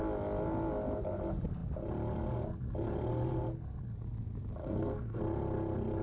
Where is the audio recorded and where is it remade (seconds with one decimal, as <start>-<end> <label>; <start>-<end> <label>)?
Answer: 0.0-4.6 recorded; 4.6-5.2 remade; 5.2-6.0 recorded